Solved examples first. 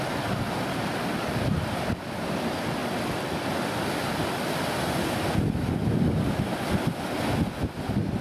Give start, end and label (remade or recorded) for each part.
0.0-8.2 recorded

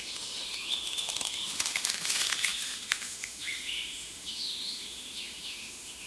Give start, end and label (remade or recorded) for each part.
0.0-6.1 remade

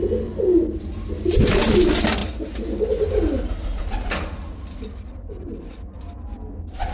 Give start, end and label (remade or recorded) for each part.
0.0-6.9 recorded

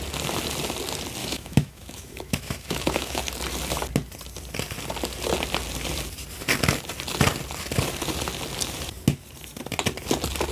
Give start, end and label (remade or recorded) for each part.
0.0-1.2 recorded; 1.2-3.2 remade; 3.2-10.5 recorded

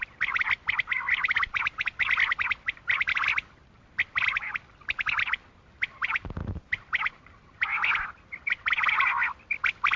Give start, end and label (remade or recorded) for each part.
0.0-10.0 recorded